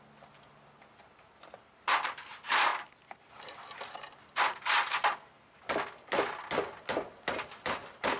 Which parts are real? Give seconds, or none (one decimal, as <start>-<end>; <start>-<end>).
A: 0.0-8.2